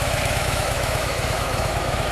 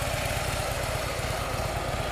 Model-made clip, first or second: first